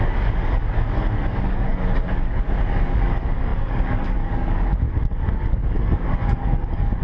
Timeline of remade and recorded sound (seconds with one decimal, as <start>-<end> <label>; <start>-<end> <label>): 0.0-7.0 remade